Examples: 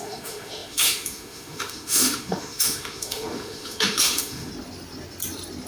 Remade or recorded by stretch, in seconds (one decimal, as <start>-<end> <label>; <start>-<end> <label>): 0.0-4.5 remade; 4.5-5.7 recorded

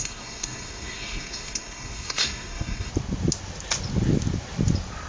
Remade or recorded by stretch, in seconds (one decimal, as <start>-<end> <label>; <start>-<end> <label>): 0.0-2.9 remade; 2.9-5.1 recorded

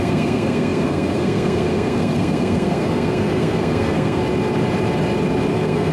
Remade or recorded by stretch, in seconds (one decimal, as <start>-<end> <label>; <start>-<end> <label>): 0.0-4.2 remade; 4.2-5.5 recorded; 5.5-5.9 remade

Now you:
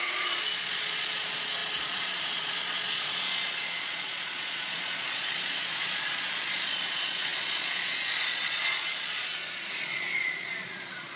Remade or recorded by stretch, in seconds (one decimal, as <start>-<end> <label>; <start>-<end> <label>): 0.0-11.2 remade

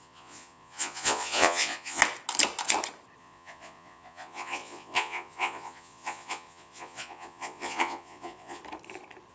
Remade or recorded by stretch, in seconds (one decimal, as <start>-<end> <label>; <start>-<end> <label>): 0.0-2.0 remade; 2.0-3.2 recorded; 3.2-8.6 remade; 8.6-9.3 recorded